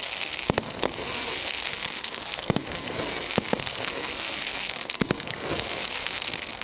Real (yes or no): no